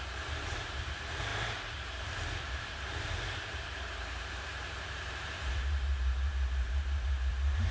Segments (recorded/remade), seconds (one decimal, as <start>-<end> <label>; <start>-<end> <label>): 0.0-7.7 remade